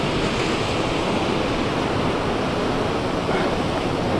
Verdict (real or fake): real